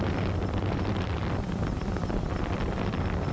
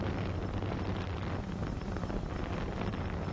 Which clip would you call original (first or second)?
second